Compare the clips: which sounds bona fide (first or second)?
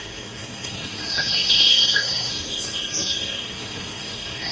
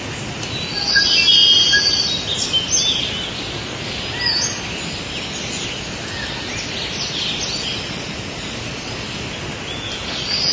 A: second